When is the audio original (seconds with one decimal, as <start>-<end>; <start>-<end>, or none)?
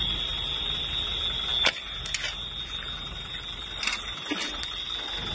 0.0-5.3